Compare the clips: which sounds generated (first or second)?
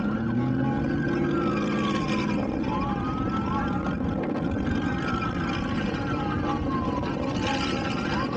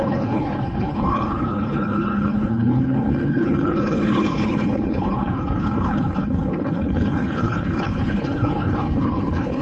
second